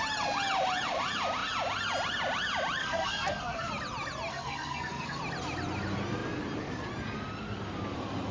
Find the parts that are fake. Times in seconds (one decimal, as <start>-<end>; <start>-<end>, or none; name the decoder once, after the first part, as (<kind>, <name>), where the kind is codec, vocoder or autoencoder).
2.8-3.7 (codec, SNAC); 4.3-5.2